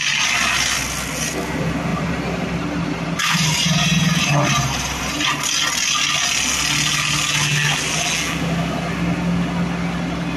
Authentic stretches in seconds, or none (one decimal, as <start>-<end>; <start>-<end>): 0.0-1.9; 5.0-10.4